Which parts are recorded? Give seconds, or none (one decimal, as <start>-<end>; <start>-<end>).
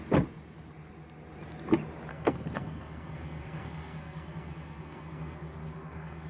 0.0-2.1